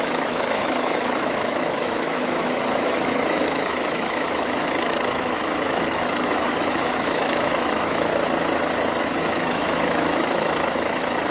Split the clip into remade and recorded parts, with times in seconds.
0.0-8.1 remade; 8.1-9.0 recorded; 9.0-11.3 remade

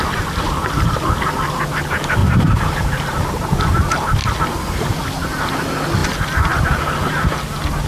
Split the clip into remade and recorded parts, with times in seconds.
0.0-2.2 recorded; 2.2-3.1 remade; 3.1-7.9 recorded

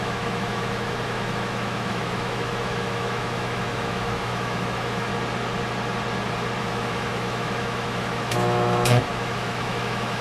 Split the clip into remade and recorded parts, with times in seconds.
0.0-5.1 remade; 5.1-6.6 recorded; 6.6-10.2 remade

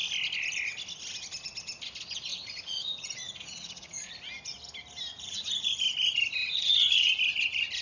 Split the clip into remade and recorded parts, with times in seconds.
0.0-2.3 recorded; 2.3-4.1 remade; 4.1-5.1 recorded; 5.1-5.7 remade; 5.7-6.4 recorded; 6.4-7.1 remade; 7.1-7.8 recorded

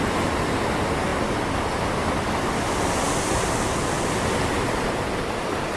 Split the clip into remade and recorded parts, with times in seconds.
0.0-5.8 recorded

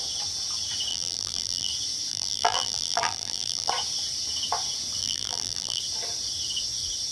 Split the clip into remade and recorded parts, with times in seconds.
0.0-0.9 recorded; 0.9-1.7 remade; 1.7-2.1 recorded; 2.1-3.7 remade; 3.7-5.0 recorded; 5.0-5.8 remade; 5.8-7.1 recorded

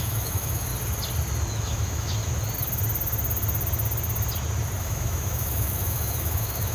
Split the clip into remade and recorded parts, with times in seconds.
0.0-0.7 remade; 0.7-1.5 recorded; 1.5-2.2 remade; 2.2-4.8 recorded; 4.8-6.7 remade

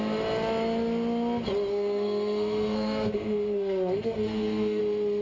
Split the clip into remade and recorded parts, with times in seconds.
0.0-1.7 recorded; 1.7-4.8 remade; 4.8-5.2 recorded